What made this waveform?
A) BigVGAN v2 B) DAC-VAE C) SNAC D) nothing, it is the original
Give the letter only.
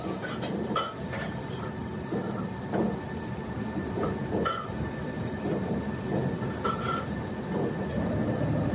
D